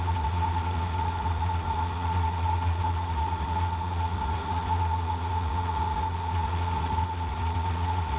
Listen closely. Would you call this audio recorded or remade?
remade